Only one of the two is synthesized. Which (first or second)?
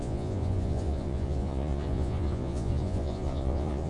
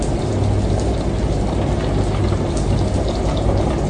first